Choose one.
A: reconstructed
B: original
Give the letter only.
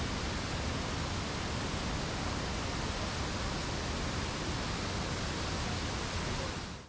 B